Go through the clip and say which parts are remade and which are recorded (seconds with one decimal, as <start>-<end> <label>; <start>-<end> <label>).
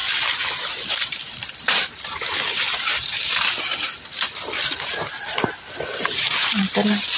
0.0-7.2 remade